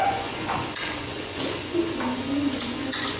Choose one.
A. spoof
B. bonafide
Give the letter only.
A